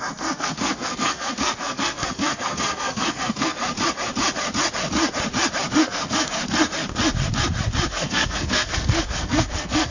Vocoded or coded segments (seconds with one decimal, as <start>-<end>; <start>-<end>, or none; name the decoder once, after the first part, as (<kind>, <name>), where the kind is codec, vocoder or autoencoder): 0.0-3.6 (codec, SNAC); 5.8-6.4; 7.9-9.9